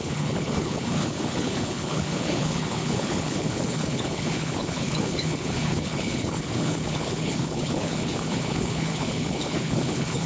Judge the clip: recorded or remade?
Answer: remade